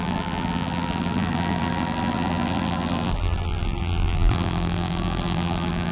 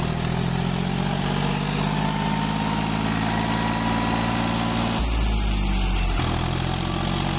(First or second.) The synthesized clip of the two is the first